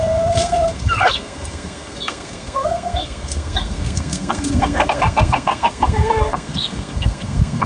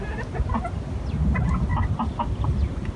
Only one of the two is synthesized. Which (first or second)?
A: first